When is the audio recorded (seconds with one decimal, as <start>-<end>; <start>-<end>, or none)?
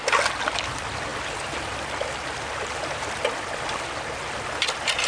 0.0-5.1